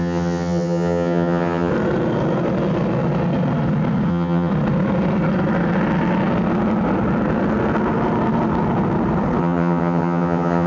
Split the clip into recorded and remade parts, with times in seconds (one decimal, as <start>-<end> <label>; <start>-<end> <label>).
0.0-1.7 remade; 1.7-4.1 recorded; 4.1-4.5 remade; 4.5-9.4 recorded; 9.4-10.7 remade